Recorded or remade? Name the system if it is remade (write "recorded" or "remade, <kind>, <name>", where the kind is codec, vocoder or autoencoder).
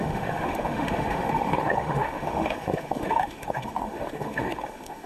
remade, autoencoder, DAC-VAE